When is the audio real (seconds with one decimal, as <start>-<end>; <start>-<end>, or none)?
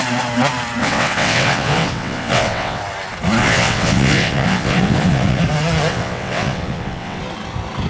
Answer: 0.0-0.8; 2.8-3.4; 5.4-5.9; 7.2-7.9